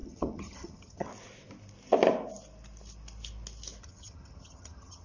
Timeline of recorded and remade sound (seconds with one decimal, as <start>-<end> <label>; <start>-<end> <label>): 0.0-1.1 remade; 1.1-3.8 recorded; 3.8-5.0 remade